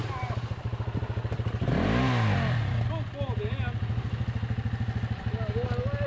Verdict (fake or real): real